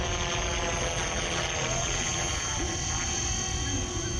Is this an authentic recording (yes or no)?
yes